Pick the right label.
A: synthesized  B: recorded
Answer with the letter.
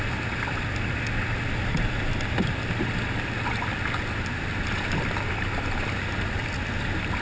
B